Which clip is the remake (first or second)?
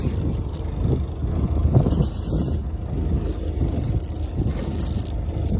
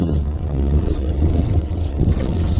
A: second